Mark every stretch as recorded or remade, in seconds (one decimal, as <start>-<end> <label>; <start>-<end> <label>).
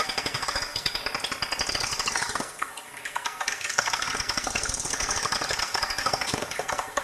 0.0-1.0 remade; 1.0-1.7 recorded; 1.7-7.0 remade